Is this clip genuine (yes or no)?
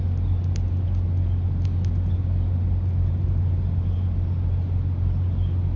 yes